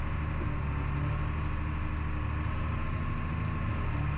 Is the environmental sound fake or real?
real